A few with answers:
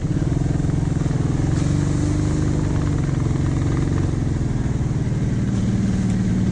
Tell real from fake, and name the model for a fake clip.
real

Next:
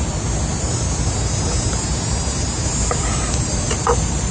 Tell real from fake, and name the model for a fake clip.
real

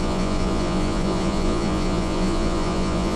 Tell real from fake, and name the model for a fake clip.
fake, vocoder, Vocos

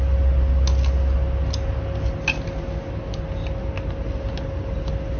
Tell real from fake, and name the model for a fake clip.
real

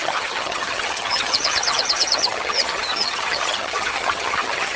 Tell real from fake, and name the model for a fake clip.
fake, vocoder, HiFi-GAN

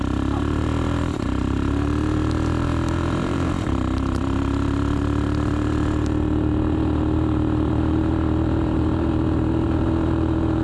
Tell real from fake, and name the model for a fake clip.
fake, vocoder, BigVGAN v2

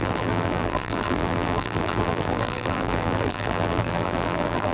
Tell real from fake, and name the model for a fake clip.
fake, vocoder, BigVGAN v2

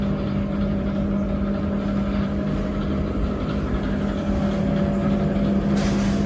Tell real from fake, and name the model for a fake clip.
real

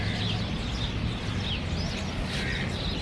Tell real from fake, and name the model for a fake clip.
real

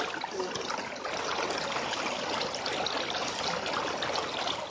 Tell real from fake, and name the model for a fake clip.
real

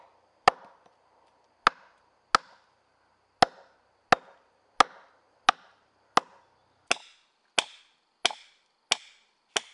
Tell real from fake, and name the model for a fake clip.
real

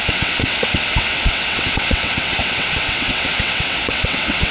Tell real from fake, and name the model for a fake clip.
fake, vocoder, WaveNeXt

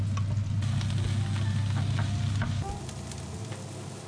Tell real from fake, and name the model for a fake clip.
real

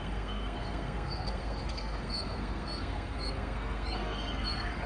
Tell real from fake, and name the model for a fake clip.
fake, codec, SNAC